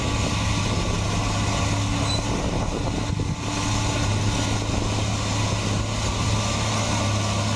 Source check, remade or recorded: recorded